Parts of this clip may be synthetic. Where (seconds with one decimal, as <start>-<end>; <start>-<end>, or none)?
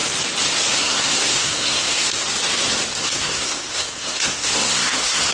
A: 0.7-2.2; 3.0-5.3